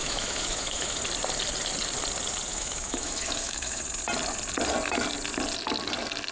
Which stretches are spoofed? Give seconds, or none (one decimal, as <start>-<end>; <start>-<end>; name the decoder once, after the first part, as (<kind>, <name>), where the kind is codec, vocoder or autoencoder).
0.0-1.0 (autoencoder, DAC-VAE); 2.5-3.8